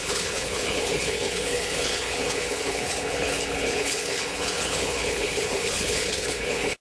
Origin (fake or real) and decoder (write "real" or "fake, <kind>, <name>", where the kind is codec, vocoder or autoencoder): fake, codec, HILCodec